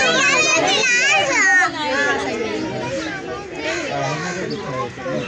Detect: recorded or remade recorded